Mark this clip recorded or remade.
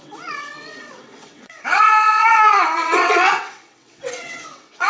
remade